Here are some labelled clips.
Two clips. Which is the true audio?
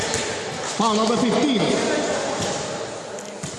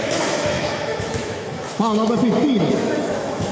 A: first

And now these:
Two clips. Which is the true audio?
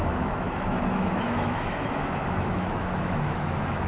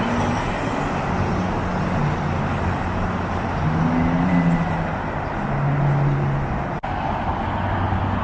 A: second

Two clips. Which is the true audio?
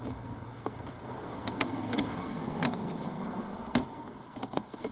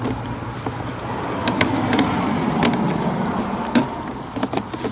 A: second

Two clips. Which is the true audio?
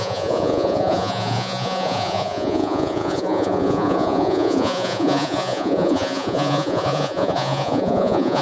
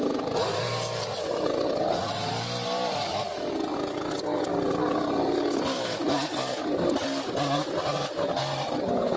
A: second